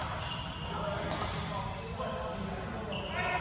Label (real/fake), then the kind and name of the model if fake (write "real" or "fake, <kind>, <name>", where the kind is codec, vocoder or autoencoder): real